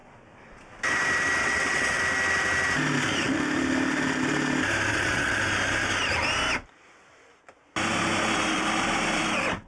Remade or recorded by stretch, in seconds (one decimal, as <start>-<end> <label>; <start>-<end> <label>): 0.0-1.4 recorded; 1.4-2.0 remade; 2.0-4.9 recorded; 4.9-5.4 remade; 5.4-9.7 recorded